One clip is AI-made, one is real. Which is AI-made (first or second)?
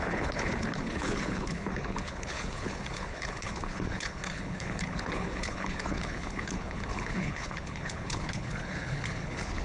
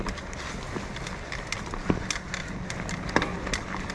first